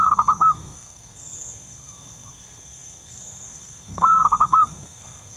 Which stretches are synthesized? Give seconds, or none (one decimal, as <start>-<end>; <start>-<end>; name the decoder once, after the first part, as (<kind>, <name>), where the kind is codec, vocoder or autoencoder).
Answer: 0.0-5.4 (codec, SNAC)